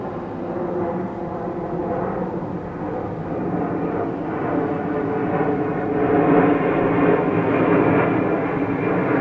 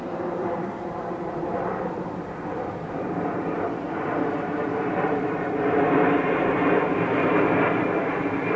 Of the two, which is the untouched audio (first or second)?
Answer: first